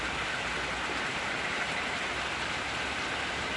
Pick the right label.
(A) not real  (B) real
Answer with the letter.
B